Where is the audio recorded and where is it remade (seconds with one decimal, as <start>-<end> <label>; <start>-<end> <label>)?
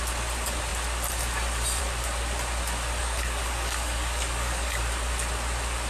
0.0-3.0 recorded; 3.0-4.8 remade; 4.8-5.9 recorded